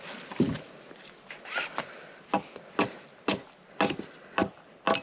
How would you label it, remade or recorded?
recorded